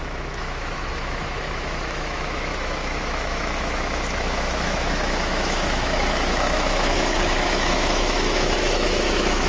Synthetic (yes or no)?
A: yes